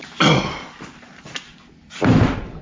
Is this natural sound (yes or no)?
yes